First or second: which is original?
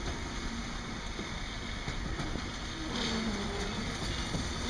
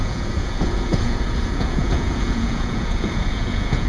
first